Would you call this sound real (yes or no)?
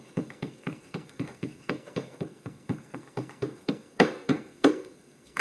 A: no